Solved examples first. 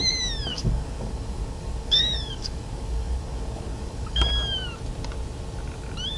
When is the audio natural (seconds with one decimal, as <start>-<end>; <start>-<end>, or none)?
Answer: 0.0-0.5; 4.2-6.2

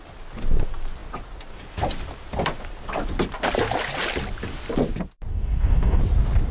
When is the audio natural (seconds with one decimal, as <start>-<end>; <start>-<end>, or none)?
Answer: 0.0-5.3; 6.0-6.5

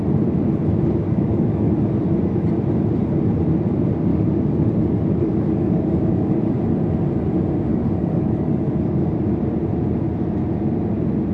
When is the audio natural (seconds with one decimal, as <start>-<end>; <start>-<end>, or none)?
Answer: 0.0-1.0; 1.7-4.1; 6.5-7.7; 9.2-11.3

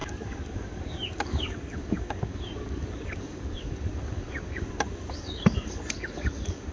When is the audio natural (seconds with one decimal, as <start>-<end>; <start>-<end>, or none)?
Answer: none

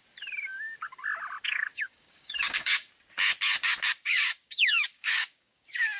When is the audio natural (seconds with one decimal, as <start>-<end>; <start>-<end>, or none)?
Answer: 0.0-1.7; 2.9-3.9